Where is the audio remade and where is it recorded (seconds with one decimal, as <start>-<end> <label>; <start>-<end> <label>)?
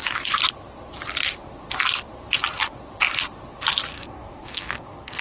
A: 0.0-3.9 recorded; 3.9-5.2 remade